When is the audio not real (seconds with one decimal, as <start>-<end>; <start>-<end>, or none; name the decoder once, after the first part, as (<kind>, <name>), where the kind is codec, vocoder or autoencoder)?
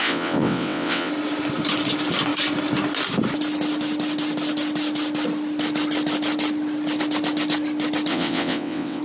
0.0-1.1 (vocoder, WaveNeXt); 8.1-9.0